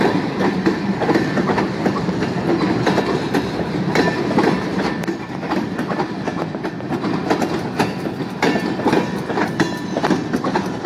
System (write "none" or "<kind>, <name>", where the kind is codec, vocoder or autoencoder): none